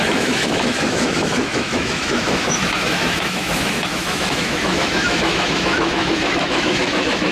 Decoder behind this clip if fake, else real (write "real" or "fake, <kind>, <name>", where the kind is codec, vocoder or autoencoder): fake, autoencoder, DAC-VAE